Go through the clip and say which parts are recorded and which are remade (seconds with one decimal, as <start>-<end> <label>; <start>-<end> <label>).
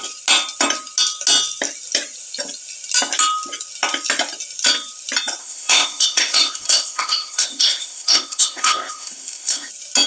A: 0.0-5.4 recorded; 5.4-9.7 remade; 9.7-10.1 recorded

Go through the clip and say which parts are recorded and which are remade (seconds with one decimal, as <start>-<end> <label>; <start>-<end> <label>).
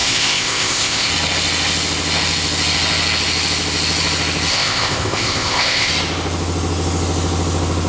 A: 0.0-1.1 remade; 1.1-4.5 recorded; 4.5-5.9 remade; 5.9-7.9 recorded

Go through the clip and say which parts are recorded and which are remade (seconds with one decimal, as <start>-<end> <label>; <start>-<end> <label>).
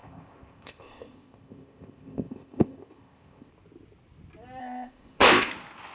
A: 0.0-3.5 remade; 3.5-4.6 recorded; 4.6-5.5 remade; 5.5-5.9 recorded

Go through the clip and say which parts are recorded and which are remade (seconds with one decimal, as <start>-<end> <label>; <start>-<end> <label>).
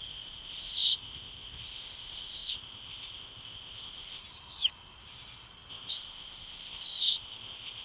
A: 0.0-4.2 remade; 4.2-5.7 recorded; 5.7-7.8 remade